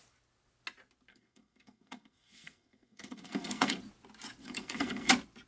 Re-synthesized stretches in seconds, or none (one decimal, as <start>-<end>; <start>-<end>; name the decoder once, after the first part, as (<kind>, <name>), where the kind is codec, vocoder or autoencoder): 1.1-3.8 (codec, SNAC); 4.4-5.1